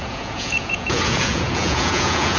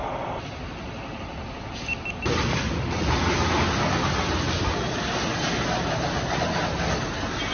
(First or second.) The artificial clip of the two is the first